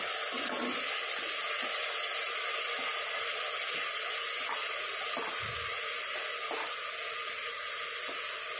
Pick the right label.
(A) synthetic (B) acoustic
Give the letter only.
B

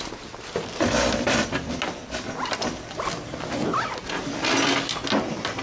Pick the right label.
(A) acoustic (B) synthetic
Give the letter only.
A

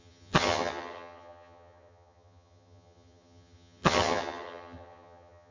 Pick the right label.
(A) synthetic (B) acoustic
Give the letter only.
A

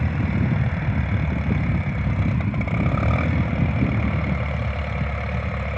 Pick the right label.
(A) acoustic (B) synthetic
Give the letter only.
A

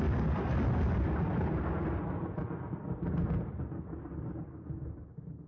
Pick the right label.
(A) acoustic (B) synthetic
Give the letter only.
A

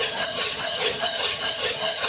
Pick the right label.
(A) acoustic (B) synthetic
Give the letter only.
B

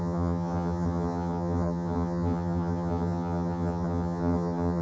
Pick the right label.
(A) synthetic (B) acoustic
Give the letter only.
A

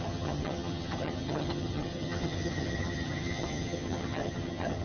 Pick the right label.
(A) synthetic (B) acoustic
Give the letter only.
A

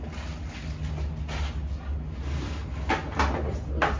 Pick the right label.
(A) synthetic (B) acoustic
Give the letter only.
B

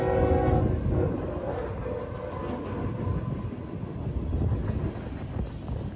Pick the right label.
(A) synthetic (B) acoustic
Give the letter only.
B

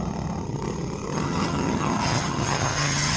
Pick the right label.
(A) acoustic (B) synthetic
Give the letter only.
B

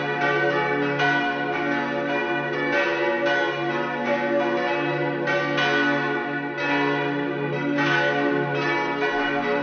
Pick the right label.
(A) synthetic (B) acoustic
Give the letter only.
B